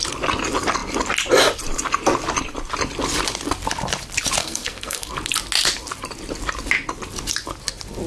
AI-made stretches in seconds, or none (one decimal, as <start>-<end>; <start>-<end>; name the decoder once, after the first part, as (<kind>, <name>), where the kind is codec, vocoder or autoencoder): 4.4-5.1 (codec, SNAC)